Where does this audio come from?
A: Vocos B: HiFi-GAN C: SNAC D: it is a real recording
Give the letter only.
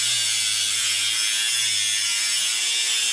D